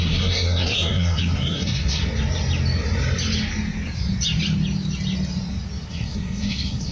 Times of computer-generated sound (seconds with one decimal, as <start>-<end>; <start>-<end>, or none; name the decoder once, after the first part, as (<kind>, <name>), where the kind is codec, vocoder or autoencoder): 0.0-2.0 (codec, SNAC); 5.9-6.9